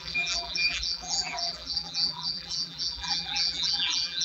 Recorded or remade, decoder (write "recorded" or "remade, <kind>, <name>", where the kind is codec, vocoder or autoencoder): remade, vocoder, BigVGAN v2